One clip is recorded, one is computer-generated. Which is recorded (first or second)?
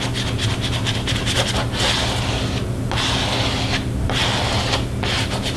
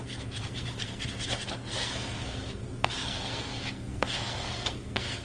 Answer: first